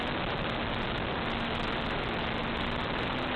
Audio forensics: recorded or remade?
recorded